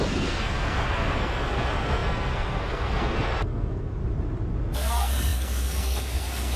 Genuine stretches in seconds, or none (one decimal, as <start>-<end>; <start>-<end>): 4.0-4.6